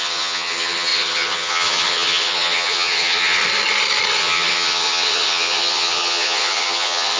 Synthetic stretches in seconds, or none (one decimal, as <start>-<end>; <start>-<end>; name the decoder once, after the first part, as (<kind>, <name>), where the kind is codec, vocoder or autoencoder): 0.0-3.4 (vocoder, HiFi-GAN); 4.2-7.2